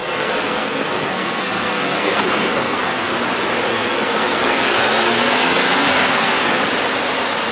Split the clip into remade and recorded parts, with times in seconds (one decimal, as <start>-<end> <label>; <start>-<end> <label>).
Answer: 0.0-3.1 remade; 3.1-3.7 recorded; 3.7-6.6 remade; 6.6-7.5 recorded